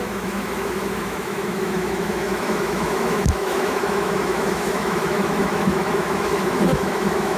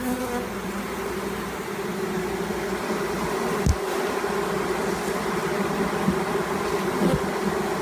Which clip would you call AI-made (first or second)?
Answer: first